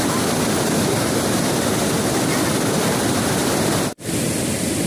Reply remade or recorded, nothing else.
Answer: remade